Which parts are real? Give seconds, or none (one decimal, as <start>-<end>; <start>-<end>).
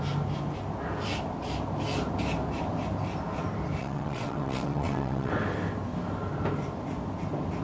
0.0-3.8; 5.3-7.6